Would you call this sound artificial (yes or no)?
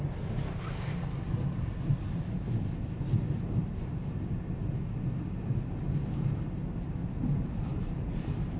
no